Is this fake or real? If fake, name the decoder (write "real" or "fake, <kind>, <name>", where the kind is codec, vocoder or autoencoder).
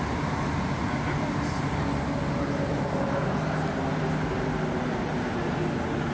real